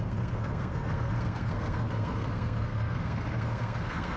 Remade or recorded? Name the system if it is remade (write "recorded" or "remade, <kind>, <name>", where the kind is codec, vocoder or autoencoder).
remade, codec, SNAC